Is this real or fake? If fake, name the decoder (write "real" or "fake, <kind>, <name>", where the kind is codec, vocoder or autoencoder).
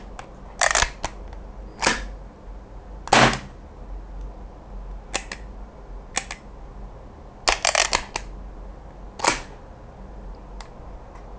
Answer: real